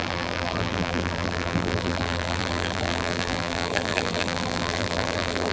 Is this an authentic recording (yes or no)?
no